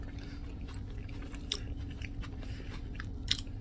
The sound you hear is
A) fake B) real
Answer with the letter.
B